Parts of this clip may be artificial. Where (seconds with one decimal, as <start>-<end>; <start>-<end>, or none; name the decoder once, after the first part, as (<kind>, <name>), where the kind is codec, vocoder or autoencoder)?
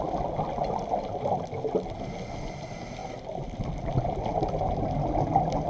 none